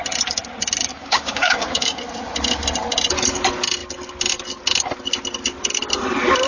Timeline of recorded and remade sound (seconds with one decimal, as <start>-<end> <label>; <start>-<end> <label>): 0.0-0.9 recorded; 0.9-2.0 remade; 2.0-6.5 recorded